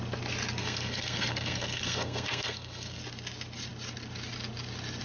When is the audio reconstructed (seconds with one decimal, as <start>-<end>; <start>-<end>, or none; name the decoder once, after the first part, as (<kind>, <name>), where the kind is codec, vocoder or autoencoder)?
0.6-3.0 (codec, SNAC)